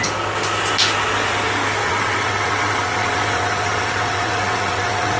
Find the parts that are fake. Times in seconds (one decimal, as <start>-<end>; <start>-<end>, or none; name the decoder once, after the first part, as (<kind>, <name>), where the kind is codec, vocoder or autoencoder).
1.8-5.2 (vocoder, WaveNeXt)